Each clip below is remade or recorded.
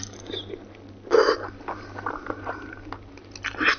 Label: recorded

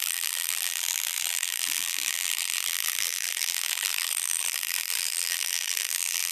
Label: remade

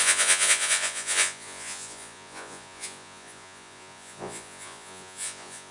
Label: remade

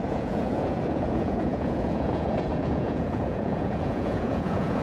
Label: remade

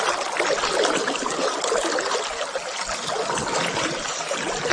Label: recorded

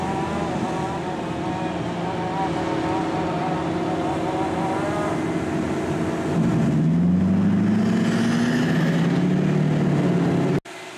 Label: recorded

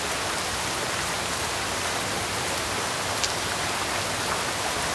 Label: recorded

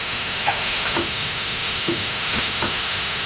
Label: remade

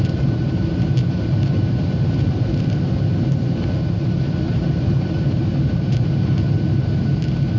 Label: remade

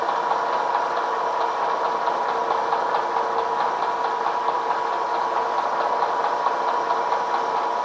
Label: recorded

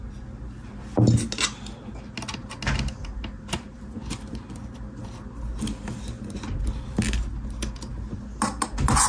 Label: recorded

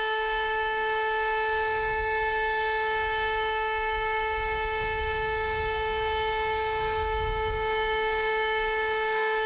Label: remade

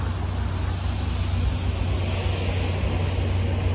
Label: recorded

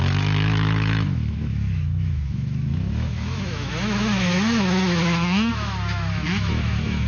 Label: remade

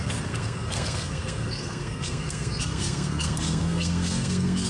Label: remade